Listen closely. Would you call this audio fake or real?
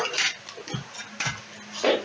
real